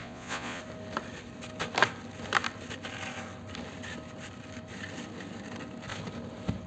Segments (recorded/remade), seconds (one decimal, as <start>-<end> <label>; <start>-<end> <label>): 0.0-0.6 remade; 0.6-6.7 recorded